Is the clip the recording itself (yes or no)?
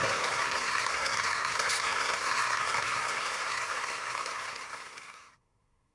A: no